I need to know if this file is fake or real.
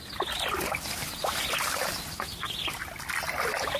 real